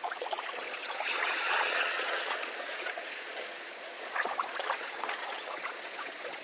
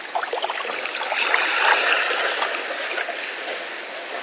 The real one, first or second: second